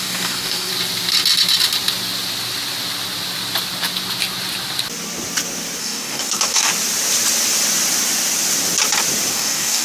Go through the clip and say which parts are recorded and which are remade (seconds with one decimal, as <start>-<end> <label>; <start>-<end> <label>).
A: 0.0-0.7 remade; 0.7-5.8 recorded; 5.8-6.7 remade; 6.7-9.3 recorded; 9.3-9.8 remade